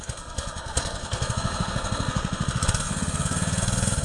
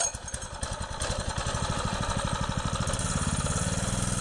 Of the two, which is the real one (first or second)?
second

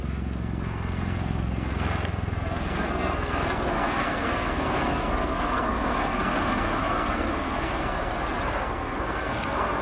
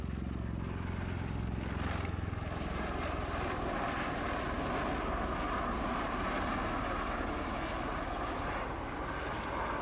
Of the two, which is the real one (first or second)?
second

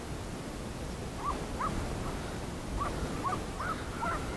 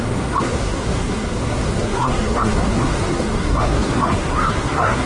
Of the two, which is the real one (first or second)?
first